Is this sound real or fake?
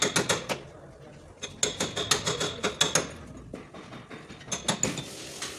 real